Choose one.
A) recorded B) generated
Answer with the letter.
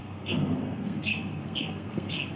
B